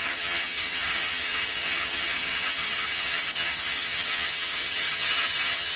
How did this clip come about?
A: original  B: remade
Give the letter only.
B